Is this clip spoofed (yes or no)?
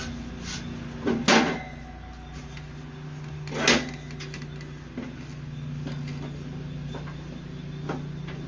no